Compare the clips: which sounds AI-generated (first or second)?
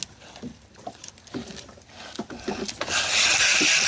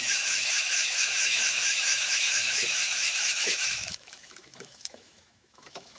second